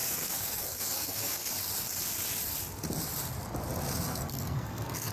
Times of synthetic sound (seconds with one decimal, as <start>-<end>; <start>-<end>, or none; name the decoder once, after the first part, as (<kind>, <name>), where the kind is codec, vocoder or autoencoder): 0.0-1.5 (codec, SNAC); 4.1-5.1